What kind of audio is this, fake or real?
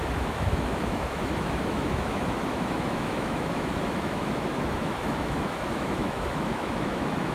fake